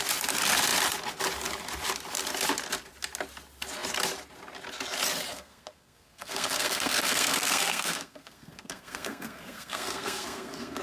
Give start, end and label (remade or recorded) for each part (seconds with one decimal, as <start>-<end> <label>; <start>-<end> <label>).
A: 0.0-5.3 recorded; 5.3-10.8 remade